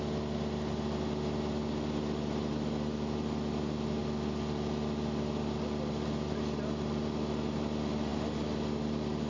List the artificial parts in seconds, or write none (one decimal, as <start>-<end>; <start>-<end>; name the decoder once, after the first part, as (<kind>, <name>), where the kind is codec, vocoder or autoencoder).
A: none